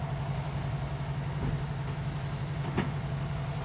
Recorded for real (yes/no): yes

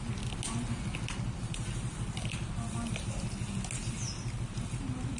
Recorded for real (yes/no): yes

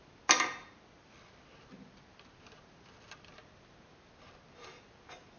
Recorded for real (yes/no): yes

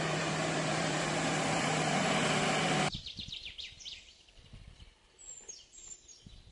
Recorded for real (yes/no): no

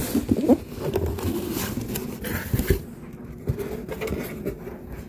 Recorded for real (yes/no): yes